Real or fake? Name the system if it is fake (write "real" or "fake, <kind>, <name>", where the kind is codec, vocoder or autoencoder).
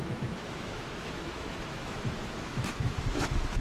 fake, autoencoder, DAC-VAE